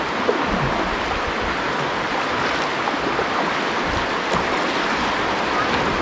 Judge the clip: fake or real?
real